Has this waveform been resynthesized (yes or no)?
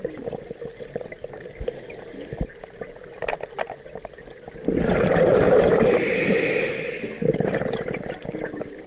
no